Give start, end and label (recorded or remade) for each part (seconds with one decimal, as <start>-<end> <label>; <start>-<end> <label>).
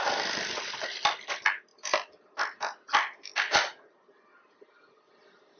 0.0-5.6 recorded